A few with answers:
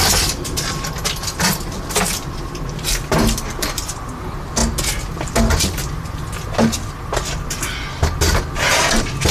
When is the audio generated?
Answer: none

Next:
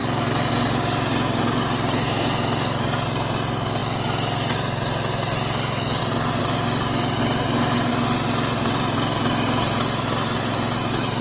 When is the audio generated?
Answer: none

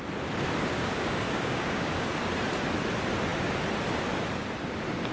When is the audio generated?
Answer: 0.7-2.2 (codec, DAC)

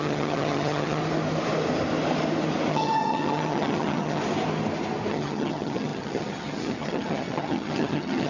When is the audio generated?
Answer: 0.0-1.0 (vocoder, HiFi-GAN); 2.7-4.2; 5.1-8.3

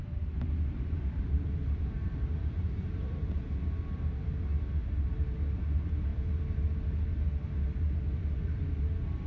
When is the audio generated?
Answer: 0.0-3.4 (vocoder, BigVGAN v2)

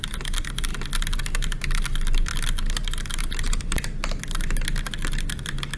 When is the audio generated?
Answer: none